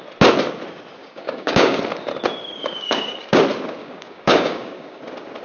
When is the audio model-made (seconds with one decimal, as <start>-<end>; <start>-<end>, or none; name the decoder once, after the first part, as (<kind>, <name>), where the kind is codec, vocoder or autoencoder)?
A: 1.0-1.8 (codec, DAC); 2.6-3.4; 3.8-5.0